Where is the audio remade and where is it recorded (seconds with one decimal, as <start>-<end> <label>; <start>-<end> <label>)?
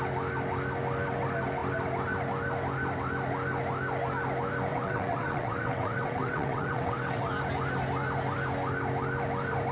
0.0-4.7 recorded; 4.7-7.2 remade; 7.2-9.7 recorded